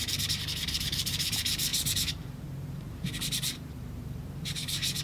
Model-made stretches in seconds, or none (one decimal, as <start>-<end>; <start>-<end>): 0.0-5.0